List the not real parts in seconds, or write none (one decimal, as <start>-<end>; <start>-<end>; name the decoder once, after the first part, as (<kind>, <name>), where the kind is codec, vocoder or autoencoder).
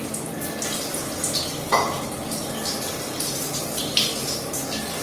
1.7-2.7 (vocoder, BigVGAN v2)